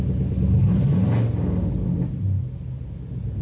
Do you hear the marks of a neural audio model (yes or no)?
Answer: no